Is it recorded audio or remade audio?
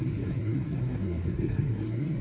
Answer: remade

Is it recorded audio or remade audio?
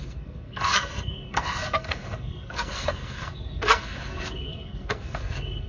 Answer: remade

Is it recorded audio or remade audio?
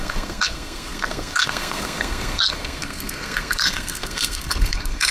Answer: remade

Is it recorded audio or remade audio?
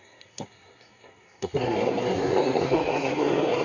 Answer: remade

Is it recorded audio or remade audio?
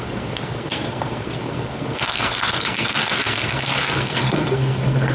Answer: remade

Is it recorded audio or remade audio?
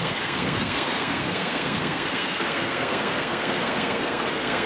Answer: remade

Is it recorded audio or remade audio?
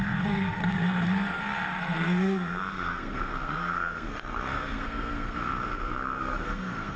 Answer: remade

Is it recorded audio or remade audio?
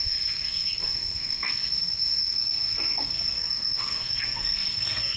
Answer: remade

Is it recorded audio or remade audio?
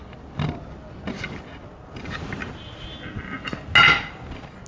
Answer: recorded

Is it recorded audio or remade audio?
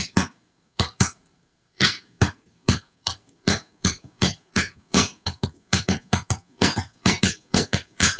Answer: remade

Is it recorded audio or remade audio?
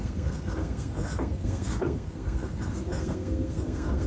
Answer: remade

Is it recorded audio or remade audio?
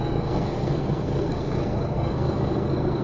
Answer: remade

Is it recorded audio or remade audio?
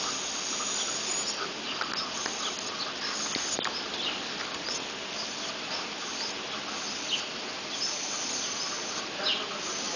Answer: recorded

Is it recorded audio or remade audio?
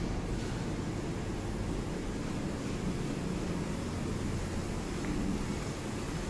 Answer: recorded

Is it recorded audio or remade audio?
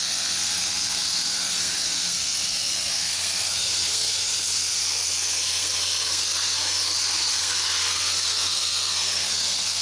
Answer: remade